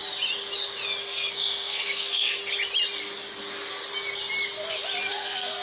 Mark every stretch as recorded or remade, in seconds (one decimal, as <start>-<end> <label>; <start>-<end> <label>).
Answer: 0.0-1.0 recorded; 1.0-2.4 remade; 2.4-5.1 recorded; 5.1-5.6 remade